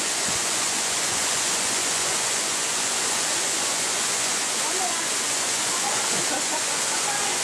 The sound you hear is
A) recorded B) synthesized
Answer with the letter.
B